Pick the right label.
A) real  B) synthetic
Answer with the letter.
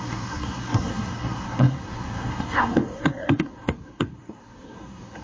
B